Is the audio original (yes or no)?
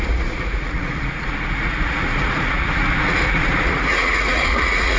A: no